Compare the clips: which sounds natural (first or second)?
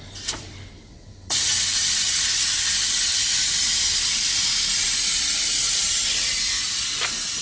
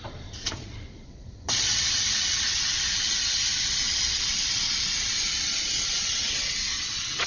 first